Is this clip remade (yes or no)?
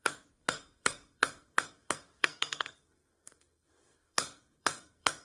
yes